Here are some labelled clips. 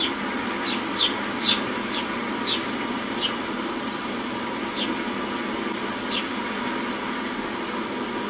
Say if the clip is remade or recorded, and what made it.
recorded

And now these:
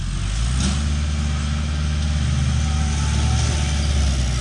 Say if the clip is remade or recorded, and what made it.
recorded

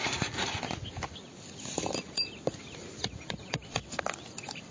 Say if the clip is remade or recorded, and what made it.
recorded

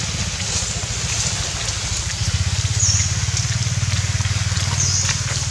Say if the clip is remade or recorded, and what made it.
recorded